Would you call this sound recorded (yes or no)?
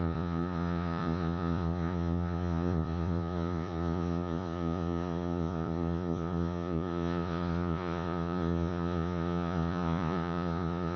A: no